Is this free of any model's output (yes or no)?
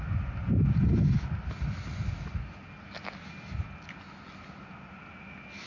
yes